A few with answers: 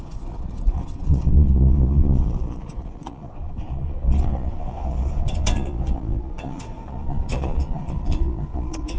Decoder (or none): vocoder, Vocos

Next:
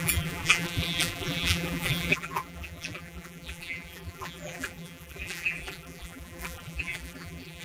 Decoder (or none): vocoder, BigVGAN v2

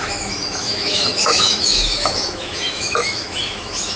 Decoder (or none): autoencoder, DAC-VAE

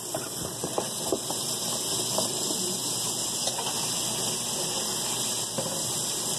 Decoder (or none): none